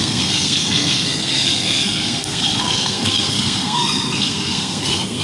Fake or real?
fake